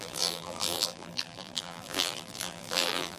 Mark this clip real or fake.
fake